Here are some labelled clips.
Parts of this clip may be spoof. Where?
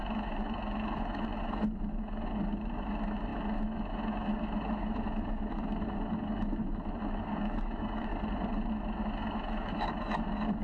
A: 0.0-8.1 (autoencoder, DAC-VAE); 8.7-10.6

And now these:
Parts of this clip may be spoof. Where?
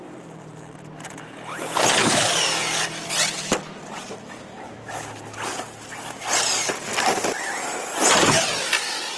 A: 6.9-7.6 (vocoder, BigVGAN v2)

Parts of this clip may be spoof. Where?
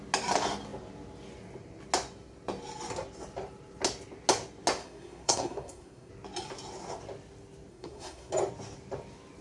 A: 4.8-6.1 (codec, SNAC); 7.7-8.3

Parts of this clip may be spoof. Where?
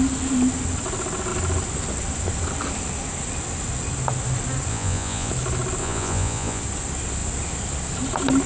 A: 4.7-5.3 (vocoder, Vocos); 5.8-6.6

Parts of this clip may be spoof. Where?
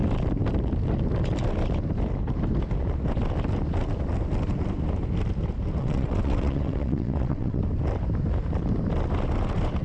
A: 5.8-7.6 (vocoder, WaveNeXt)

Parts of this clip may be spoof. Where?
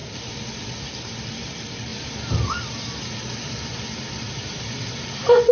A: 0.0-0.7 (vocoder, BigVGAN v2); 1.9-5.5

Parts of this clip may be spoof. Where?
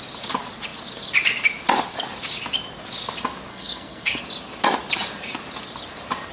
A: 3.5-4.2 (codec, SNAC)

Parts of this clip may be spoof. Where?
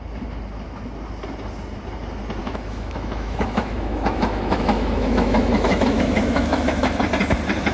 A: 2.4-7.0 (autoencoder, DAC-VAE)